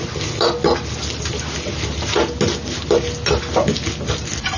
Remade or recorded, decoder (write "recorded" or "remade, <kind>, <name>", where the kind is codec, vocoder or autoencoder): recorded